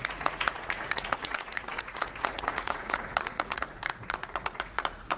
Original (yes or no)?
no